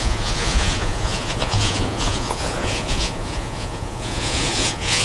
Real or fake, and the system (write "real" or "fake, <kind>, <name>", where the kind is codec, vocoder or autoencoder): fake, vocoder, Vocos